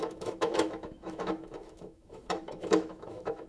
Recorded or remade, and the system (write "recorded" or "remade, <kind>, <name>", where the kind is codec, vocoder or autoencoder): remade, autoencoder, DAC-VAE